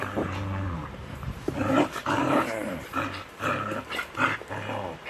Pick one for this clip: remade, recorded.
remade